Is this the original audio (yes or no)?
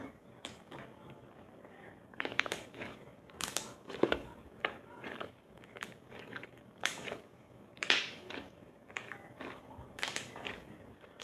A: no